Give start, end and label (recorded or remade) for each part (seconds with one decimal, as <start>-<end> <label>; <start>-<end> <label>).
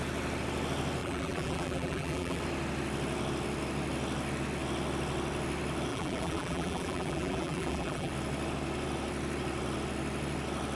0.0-1.0 recorded; 1.0-2.4 remade; 2.4-5.9 recorded; 5.9-8.1 remade; 8.1-10.8 recorded